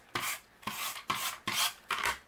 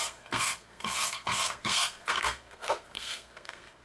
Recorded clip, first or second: first